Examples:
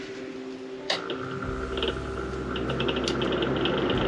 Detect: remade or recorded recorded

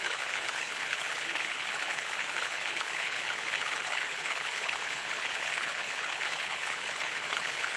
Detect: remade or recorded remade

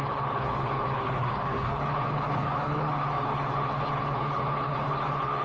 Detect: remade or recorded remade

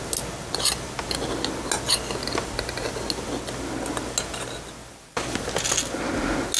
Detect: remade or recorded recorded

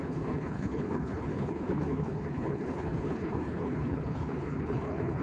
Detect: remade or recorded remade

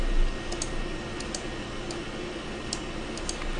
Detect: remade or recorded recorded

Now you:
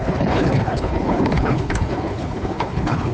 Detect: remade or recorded remade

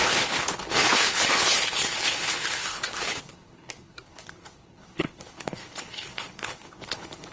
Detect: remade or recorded remade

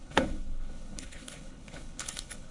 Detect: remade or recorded remade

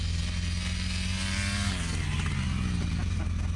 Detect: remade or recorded recorded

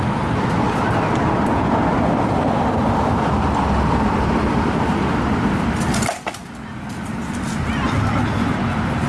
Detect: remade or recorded recorded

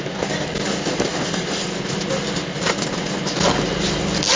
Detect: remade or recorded recorded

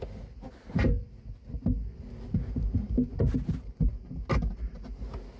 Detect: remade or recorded recorded